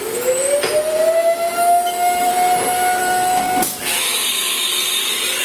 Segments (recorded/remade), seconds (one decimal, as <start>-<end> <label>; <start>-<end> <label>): 0.0-1.2 recorded; 1.2-2.3 remade; 2.3-3.0 recorded; 3.0-4.7 remade; 4.7-5.4 recorded